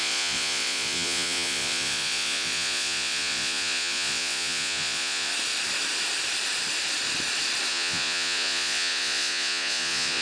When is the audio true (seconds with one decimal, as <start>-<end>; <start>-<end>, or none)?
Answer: 5.3-7.7